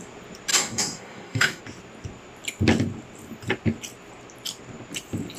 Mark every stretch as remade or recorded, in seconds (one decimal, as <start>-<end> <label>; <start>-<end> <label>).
0.0-0.5 recorded; 0.5-1.6 remade; 1.6-5.4 recorded